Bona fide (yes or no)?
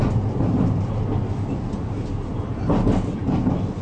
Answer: yes